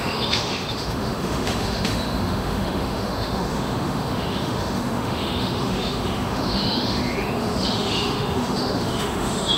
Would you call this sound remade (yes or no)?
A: yes